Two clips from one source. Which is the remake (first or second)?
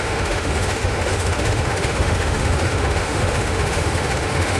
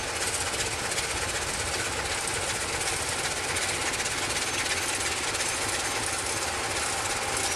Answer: first